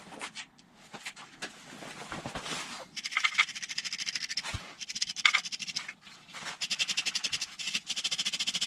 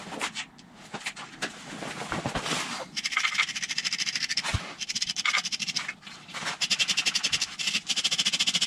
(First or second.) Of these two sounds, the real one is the second